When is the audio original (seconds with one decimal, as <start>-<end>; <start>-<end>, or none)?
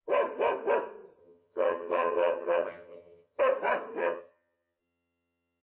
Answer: 0.0-1.2; 3.4-4.0